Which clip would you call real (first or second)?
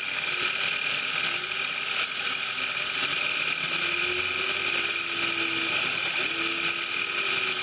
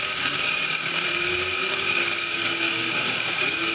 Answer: first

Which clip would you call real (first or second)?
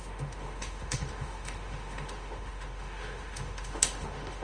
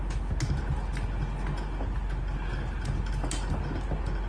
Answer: second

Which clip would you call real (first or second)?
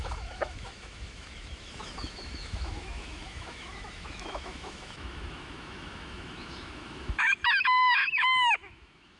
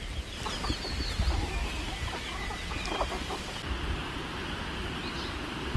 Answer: second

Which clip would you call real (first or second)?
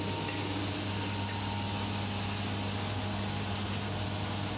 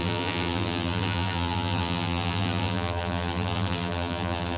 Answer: first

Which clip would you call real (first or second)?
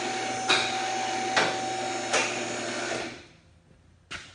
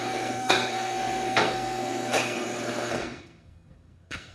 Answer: first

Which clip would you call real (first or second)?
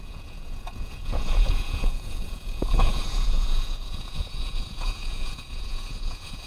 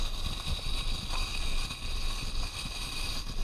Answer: second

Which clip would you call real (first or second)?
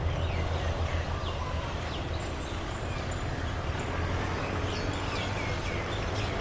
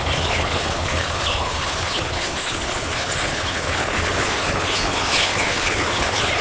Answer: first